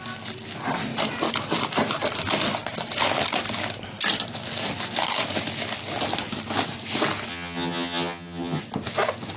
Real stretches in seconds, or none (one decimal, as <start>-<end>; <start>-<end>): 0.0-7.3; 8.6-9.4